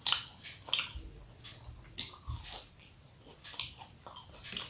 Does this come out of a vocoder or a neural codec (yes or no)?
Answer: no